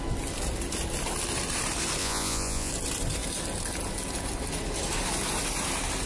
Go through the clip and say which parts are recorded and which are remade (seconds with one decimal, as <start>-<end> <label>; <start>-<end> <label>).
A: 0.0-2.0 recorded; 2.0-2.7 remade; 2.7-6.1 recorded